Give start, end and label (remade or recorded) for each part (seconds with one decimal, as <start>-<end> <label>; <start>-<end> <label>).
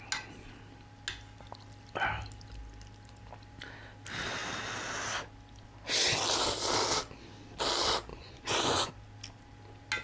0.0-8.1 recorded; 8.1-8.9 remade; 8.9-10.0 recorded